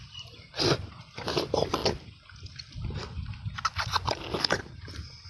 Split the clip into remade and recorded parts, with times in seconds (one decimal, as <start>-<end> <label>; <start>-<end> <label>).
0.0-5.3 recorded